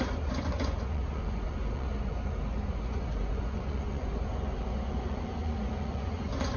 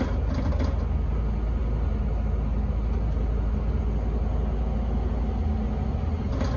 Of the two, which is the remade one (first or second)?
first